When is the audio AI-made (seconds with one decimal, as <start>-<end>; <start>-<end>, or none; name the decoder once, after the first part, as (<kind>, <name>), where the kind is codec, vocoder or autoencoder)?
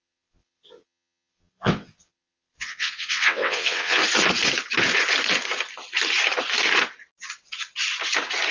0.0-4.0 (vocoder, WaveNeXt)